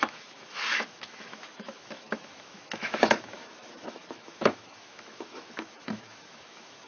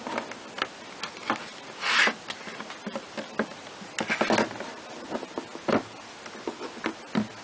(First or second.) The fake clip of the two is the first